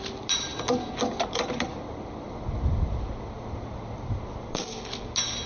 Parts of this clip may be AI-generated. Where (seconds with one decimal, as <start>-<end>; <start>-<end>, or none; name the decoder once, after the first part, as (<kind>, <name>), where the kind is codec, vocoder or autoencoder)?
none

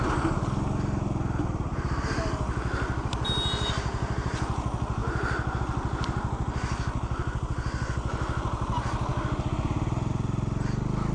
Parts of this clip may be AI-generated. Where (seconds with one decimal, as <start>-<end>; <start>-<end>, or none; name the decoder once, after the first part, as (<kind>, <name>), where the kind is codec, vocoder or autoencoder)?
none